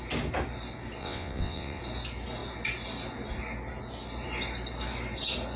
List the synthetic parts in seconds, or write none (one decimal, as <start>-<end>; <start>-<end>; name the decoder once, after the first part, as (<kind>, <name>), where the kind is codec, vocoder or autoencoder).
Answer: 1.0-1.8 (vocoder, WaveNeXt)